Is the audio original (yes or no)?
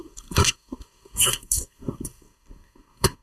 no